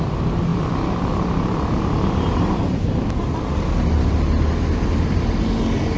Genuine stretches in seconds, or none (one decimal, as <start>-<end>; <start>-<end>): 0.0-6.0